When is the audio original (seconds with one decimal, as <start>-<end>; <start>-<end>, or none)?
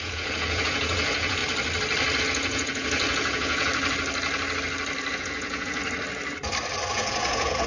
1.4-2.2; 3.7-5.1; 5.8-6.9